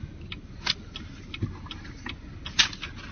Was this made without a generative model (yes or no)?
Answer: yes